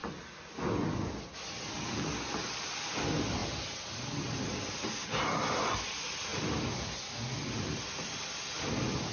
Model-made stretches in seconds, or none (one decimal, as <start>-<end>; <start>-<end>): none